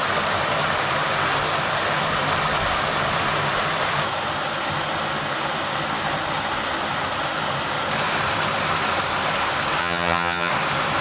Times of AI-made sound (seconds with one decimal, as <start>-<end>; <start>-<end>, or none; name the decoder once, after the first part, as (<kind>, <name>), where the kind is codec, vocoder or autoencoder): 9.8-10.5 (vocoder, HiFi-GAN)